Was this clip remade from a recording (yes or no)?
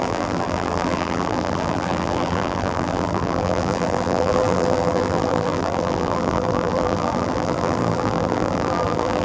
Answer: yes